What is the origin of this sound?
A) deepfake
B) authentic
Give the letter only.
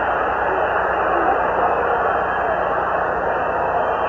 B